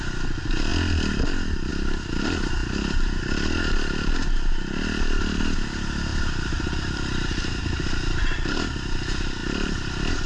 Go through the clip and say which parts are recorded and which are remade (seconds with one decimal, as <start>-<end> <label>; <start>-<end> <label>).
0.0-2.6 recorded; 2.6-3.2 remade; 3.2-6.1 recorded; 6.1-7.6 remade; 7.6-9.4 recorded; 9.4-10.3 remade